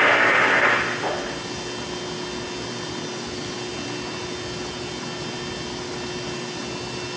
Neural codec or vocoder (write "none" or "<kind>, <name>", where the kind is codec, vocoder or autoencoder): none